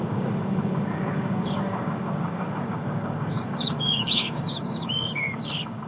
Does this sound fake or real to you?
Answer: fake